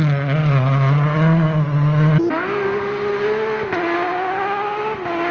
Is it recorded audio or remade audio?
recorded